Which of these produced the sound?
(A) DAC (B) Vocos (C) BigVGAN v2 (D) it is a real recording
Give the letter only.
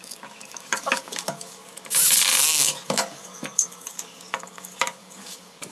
A